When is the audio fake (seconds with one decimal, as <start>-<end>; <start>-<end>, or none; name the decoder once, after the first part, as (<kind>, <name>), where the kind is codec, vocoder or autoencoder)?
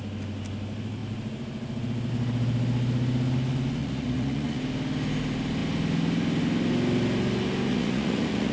3.8-4.6 (vocoder, Vocos); 7.7-8.5